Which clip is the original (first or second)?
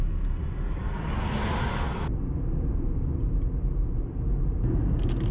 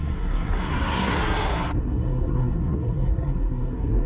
first